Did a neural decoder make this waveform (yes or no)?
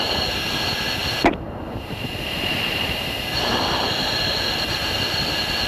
no